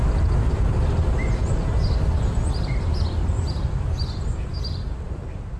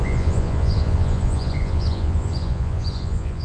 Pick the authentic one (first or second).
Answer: first